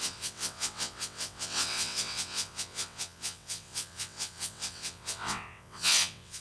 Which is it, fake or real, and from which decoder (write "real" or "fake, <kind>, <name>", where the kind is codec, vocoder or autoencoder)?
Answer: fake, vocoder, WaveNeXt